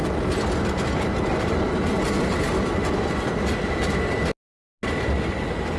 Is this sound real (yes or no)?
yes